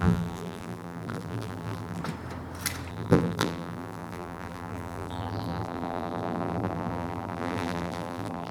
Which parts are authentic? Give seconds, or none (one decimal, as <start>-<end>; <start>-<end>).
2.0-2.9